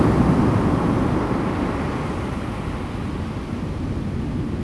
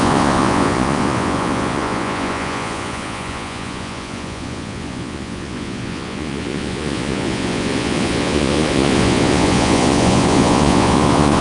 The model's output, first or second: second